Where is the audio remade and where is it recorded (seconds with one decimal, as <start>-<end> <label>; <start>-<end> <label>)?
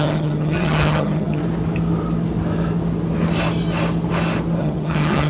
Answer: 0.0-1.4 remade; 1.4-4.6 recorded; 4.6-5.3 remade